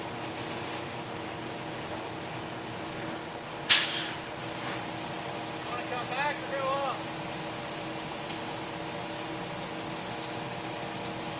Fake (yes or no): no